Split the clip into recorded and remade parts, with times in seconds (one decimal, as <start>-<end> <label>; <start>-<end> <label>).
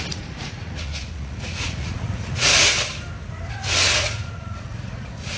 0.0-2.5 remade; 2.5-3.5 recorded; 3.5-5.4 remade